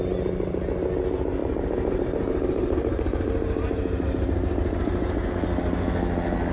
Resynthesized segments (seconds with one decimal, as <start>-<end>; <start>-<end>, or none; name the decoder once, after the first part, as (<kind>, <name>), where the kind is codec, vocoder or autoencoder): 1.4-5.3 (vocoder, BigVGAN v2)